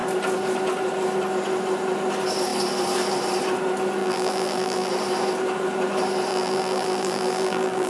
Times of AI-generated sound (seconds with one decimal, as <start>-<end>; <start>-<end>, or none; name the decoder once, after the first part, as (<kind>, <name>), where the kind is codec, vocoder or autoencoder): 4.0-4.9 (vocoder, BigVGAN v2); 6.3-7.9